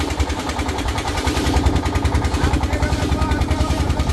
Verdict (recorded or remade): remade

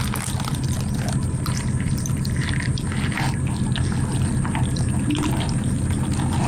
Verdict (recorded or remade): recorded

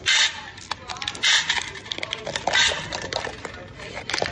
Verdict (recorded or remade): recorded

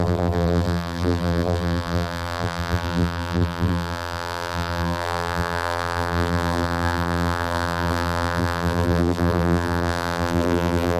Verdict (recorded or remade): remade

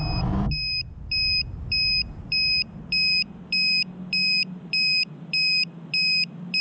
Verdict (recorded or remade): recorded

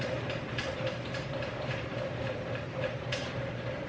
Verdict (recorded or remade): remade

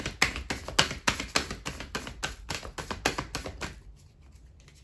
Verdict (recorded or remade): recorded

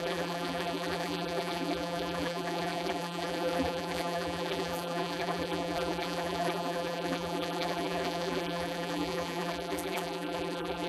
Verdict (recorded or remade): remade